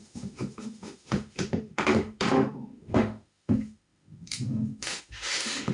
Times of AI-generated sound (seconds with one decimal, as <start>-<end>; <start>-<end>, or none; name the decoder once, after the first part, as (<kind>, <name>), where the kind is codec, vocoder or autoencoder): 0.0-5.7 (autoencoder, DAC-VAE)

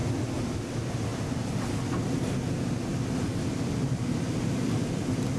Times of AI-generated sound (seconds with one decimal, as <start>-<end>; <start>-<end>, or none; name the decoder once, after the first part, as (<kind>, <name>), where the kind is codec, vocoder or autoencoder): 0.0-1.1 (vocoder, BigVGAN v2); 4.3-5.4